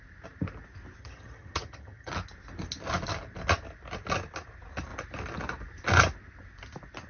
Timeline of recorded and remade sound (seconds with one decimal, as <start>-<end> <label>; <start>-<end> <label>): 0.0-1.0 recorded; 1.0-2.1 remade; 2.1-7.1 recorded

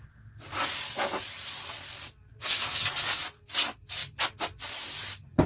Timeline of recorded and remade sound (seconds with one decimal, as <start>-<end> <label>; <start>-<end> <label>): 0.0-5.5 recorded